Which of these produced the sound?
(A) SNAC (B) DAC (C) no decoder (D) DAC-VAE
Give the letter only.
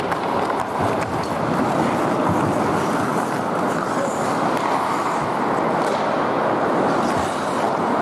C